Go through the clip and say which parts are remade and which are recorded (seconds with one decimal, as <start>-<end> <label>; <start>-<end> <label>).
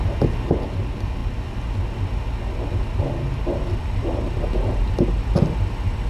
0.0-6.1 recorded